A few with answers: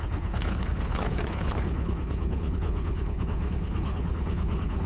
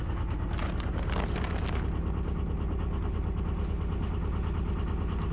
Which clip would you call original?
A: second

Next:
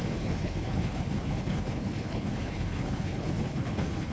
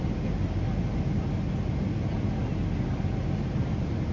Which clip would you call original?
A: second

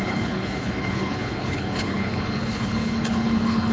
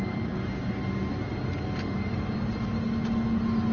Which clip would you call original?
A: second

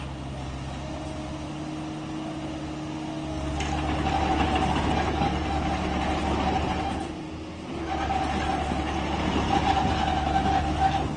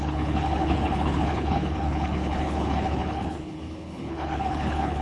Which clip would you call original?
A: first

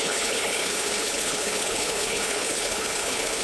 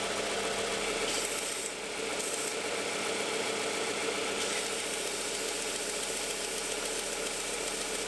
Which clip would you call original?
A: second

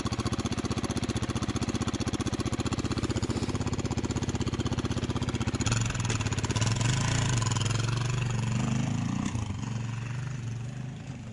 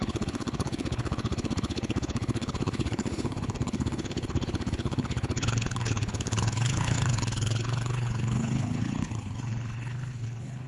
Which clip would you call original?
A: first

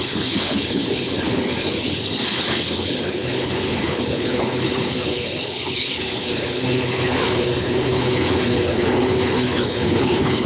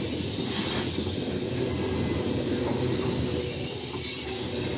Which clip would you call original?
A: second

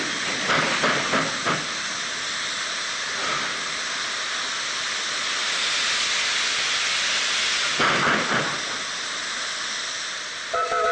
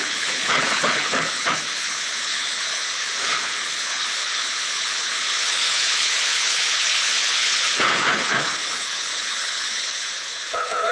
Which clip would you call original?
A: first